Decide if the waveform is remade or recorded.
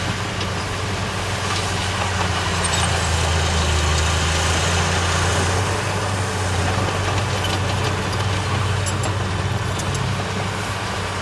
recorded